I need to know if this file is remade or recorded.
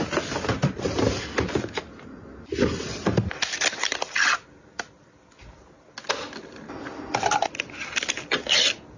recorded